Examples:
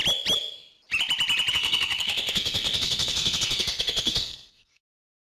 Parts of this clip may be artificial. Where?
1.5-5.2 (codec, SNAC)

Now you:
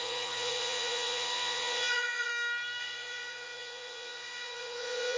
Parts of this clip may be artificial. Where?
0.0-2.3 (vocoder, Vocos); 2.8-5.2

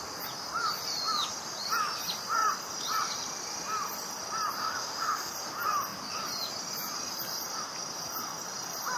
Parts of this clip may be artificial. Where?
4.6-5.3 (autoencoder, DAC-VAE)

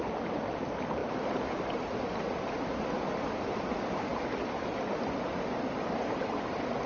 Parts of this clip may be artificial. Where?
none

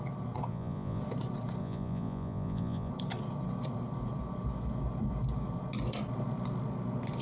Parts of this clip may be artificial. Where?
0.5-1.0 (vocoder, Vocos); 1.6-2.9

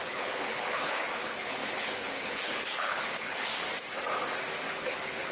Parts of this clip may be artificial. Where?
0.0-3.5 (codec, HILCodec); 4.7-5.3

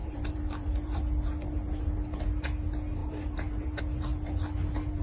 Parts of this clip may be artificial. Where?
0.0-1.0 (vocoder, BigVGAN v2); 3.0-3.8